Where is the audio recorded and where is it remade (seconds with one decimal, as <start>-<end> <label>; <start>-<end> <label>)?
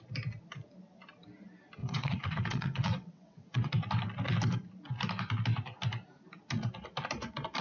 0.0-1.8 recorded; 1.8-3.7 remade; 3.7-7.6 recorded